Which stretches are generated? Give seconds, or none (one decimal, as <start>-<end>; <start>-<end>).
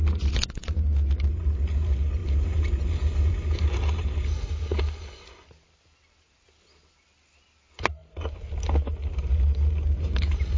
none